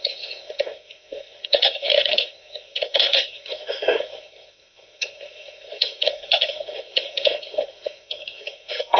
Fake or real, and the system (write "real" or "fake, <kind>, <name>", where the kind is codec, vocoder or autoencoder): fake, codec, SNAC